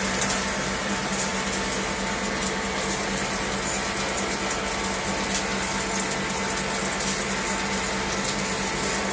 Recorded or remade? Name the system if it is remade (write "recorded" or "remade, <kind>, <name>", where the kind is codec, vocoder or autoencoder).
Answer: recorded